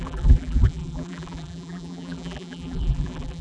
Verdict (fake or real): fake